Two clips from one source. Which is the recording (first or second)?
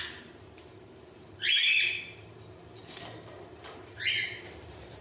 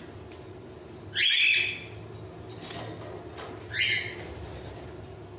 second